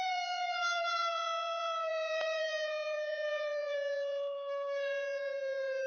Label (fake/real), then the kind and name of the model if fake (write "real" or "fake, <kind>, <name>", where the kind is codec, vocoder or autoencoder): fake, vocoder, Vocos